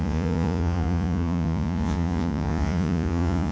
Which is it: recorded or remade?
remade